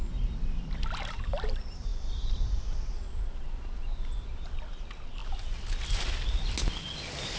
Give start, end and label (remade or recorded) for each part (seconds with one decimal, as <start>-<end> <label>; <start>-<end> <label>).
0.0-7.4 recorded